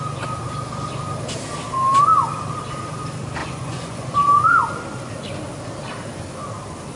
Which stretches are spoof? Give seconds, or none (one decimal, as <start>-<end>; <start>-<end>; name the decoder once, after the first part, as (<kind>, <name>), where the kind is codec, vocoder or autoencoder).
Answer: 3.4-4.6 (vocoder, Vocos)